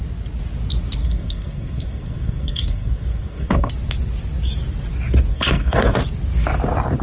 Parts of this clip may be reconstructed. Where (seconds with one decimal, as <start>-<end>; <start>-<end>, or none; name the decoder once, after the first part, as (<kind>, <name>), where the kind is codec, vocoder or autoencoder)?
1.0-3.7 (codec, SNAC); 5.3-6.0